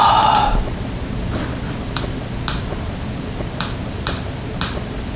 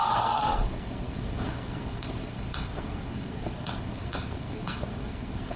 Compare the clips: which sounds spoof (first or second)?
second